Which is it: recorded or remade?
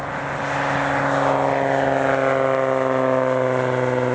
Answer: recorded